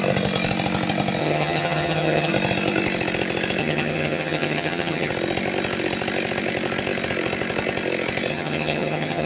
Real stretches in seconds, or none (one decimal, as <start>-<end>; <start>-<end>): 0.0-1.2; 2.3-3.6; 5.1-8.3